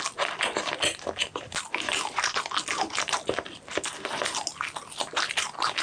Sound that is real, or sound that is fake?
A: real